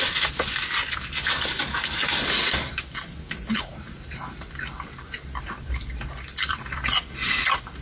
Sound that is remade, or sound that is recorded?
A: recorded